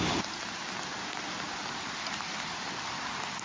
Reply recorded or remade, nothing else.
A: recorded